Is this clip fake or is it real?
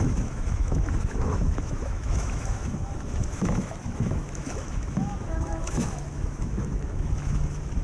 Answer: fake